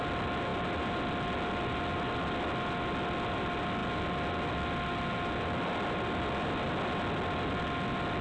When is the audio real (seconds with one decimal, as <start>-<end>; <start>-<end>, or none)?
0.0-8.2